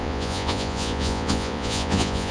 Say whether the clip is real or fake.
fake